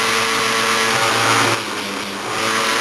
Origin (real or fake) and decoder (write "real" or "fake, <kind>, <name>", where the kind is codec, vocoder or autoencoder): real